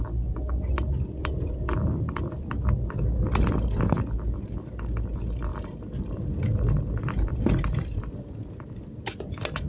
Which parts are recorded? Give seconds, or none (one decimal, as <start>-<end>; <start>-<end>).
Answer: 0.0-9.7